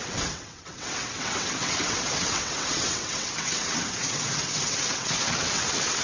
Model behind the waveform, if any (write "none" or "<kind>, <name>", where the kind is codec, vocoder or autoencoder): vocoder, WaveNeXt